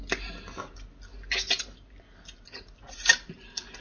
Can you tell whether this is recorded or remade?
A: recorded